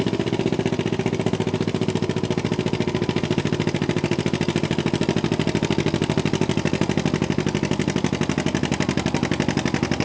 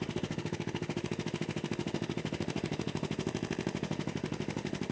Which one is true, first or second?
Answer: first